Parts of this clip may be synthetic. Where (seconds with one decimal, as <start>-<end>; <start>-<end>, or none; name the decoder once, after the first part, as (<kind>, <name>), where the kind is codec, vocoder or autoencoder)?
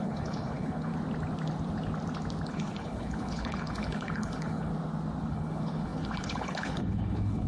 0.0-0.9 (codec, HILCodec); 2.5-4.7; 5.3-7.5